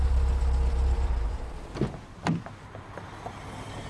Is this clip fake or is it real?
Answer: real